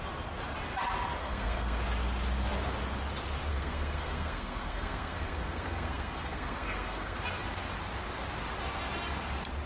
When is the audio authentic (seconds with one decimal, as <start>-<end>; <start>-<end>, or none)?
0.0-1.2; 1.8-3.5; 7.2-9.7